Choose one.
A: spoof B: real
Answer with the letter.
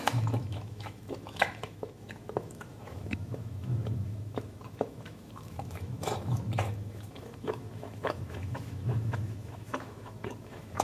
A